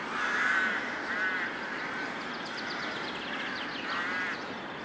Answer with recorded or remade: remade